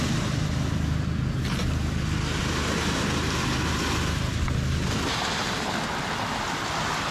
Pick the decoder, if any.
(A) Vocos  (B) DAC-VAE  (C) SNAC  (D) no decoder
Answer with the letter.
D